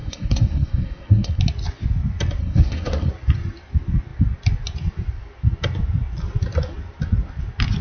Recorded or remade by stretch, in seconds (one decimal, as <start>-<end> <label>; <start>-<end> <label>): 0.0-1.4 remade; 1.4-2.4 recorded; 2.4-3.1 remade; 3.1-7.8 recorded